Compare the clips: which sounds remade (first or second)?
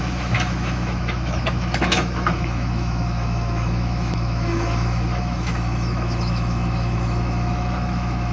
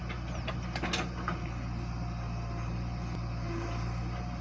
first